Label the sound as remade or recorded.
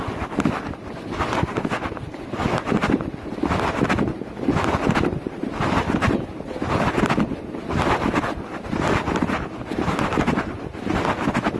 recorded